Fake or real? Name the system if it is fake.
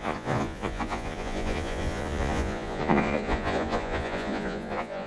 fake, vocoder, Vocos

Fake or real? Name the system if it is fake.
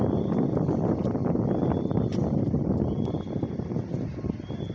real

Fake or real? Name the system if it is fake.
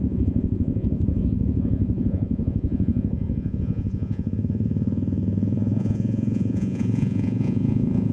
fake, vocoder, Vocos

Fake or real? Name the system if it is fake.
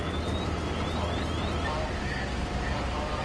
real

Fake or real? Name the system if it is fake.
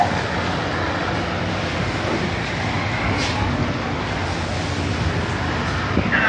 real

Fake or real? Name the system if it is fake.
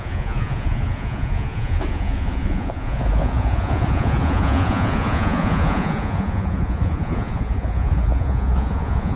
fake, vocoder, Vocos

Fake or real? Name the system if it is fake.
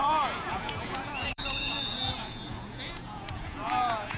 fake, vocoder, Vocos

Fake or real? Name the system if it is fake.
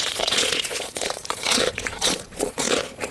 fake, vocoder, Vocos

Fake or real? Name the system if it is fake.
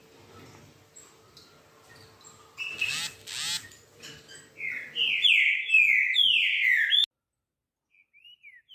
real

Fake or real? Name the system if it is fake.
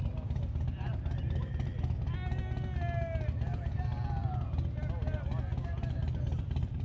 real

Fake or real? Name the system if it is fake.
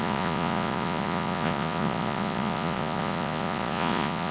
fake, vocoder, Vocos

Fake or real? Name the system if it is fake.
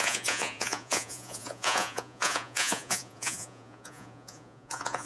fake, vocoder, Vocos